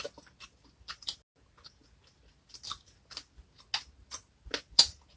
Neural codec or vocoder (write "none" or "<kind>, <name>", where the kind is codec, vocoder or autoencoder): none